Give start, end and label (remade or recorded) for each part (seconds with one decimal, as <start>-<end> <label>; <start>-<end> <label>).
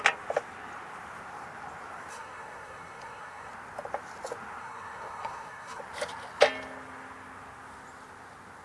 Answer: 0.0-2.1 recorded; 2.1-3.5 remade; 3.5-4.6 recorded; 4.6-5.8 remade; 5.8-8.6 recorded